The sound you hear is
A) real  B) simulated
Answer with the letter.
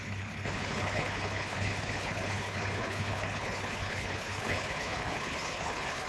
B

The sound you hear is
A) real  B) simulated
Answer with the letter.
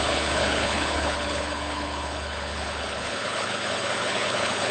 B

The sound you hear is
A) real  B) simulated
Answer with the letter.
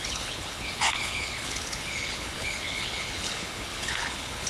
B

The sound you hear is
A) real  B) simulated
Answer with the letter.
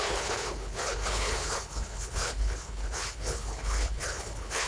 B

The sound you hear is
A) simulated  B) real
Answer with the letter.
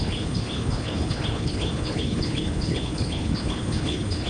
A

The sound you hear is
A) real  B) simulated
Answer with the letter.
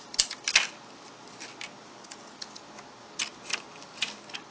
A